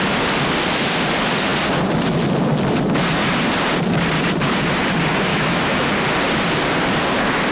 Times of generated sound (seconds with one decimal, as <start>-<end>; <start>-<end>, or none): 5.3-5.9